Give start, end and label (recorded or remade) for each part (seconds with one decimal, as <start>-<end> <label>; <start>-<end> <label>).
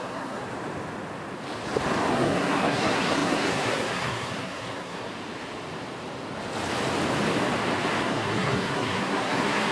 0.0-0.5 remade; 0.5-2.1 recorded; 2.1-5.1 remade; 5.1-8.0 recorded; 8.0-9.7 remade